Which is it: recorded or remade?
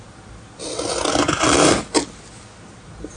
recorded